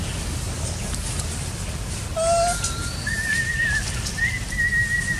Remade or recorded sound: recorded